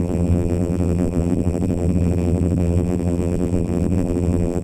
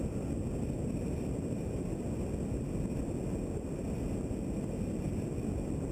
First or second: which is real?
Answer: second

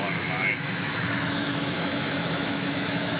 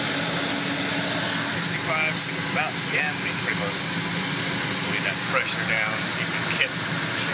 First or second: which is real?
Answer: second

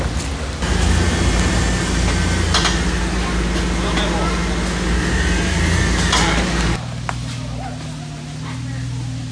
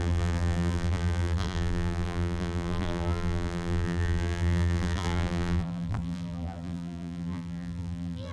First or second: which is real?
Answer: first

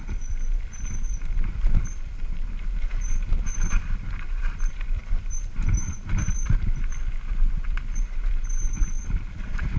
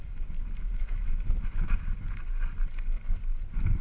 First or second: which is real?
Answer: second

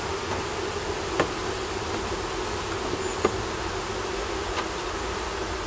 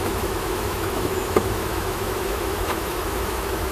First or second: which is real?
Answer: first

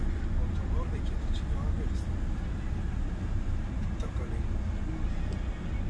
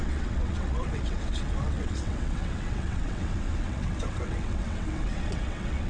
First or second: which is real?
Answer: first